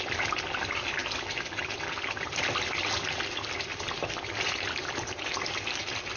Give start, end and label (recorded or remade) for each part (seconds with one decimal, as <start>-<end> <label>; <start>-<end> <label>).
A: 0.0-6.2 recorded